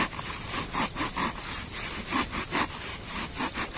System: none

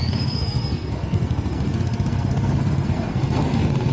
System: codec, SNAC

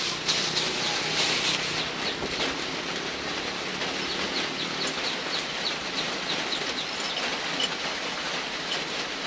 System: none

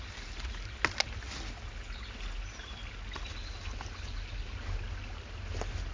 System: none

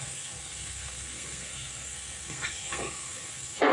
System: codec, SNAC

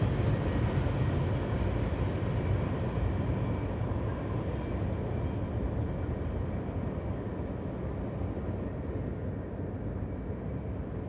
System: none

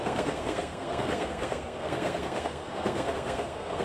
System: codec, SNAC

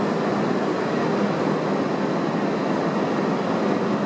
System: none